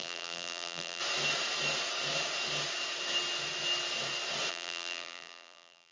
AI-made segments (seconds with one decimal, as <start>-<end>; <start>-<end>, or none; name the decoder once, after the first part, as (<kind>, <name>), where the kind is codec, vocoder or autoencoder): 0.0-1.0 (vocoder, BigVGAN v2); 4.5-5.9